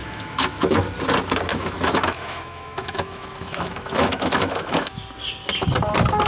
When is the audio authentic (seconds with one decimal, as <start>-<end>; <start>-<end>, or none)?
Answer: 0.8-1.5; 5.0-6.3